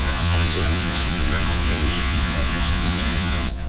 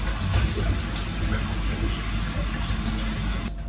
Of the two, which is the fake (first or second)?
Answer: first